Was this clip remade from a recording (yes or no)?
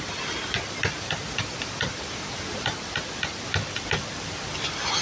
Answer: no